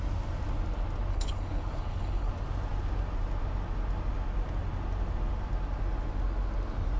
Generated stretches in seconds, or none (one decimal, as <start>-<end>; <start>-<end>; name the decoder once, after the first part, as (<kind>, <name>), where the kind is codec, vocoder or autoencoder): 1.1-2.3 (codec, HILCodec)